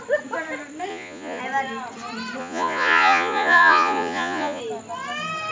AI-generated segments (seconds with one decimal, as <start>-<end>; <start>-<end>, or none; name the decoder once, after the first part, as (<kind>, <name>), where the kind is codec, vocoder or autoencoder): 0.9-1.4 (vocoder, Vocos); 2.4-4.6